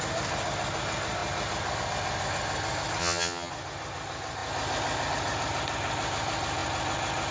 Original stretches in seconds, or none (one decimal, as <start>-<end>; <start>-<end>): 0.0-3.0; 3.5-7.3